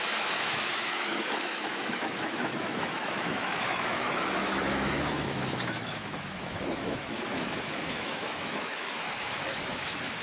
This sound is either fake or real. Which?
fake